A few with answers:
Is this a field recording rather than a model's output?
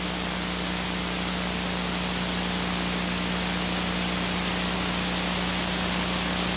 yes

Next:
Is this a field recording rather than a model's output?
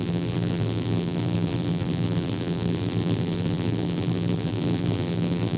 no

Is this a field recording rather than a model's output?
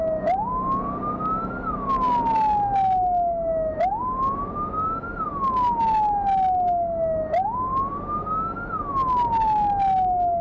yes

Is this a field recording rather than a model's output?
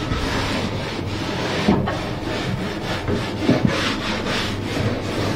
no